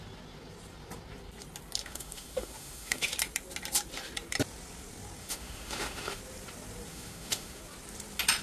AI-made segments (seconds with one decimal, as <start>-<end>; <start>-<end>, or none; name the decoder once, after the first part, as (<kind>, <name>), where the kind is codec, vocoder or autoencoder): 1.8-3.1 (autoencoder, DAC-VAE); 5.2-6.2; 6.9-7.6